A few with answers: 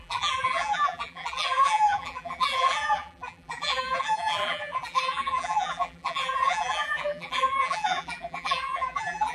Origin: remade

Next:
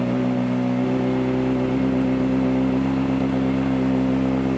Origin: recorded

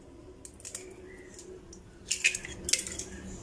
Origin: recorded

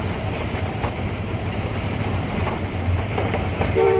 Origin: remade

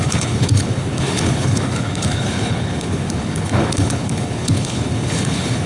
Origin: remade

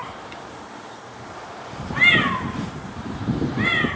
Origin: remade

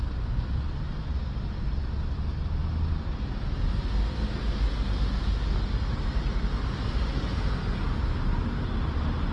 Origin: recorded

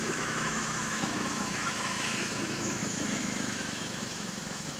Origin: remade